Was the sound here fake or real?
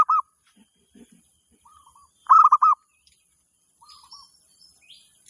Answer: fake